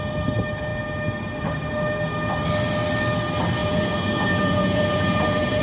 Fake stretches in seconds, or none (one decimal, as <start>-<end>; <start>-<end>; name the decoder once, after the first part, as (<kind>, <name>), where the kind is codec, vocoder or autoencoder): 3.6-5.6 (vocoder, Vocos)